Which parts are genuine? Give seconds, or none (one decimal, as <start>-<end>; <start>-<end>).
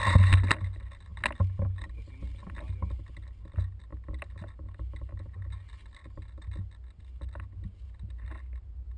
0.0-9.0